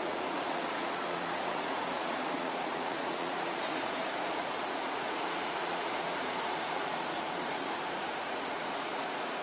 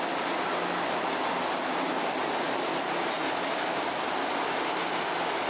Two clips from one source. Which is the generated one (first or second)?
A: first